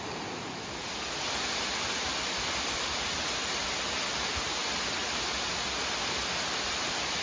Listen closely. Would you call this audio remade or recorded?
recorded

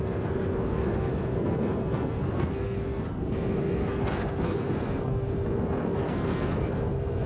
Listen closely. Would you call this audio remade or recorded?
remade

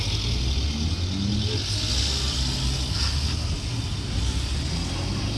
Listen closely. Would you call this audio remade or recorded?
recorded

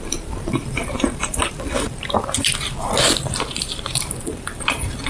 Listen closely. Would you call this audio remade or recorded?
remade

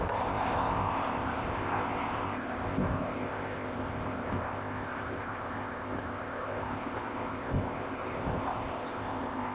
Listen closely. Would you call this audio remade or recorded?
remade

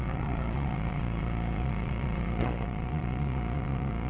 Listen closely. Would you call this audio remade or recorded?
remade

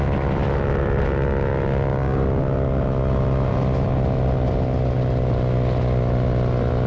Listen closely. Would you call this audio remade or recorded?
recorded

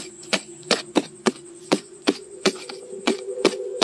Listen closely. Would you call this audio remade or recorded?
remade